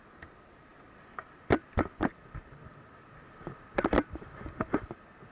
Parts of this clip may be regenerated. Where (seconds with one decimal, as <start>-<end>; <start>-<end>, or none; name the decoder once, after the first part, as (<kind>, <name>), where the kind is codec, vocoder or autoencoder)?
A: none